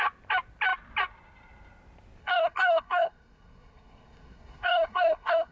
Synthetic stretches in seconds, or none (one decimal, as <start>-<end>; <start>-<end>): 2.2-5.5